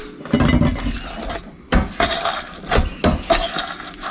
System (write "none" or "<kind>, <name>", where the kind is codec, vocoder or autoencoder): none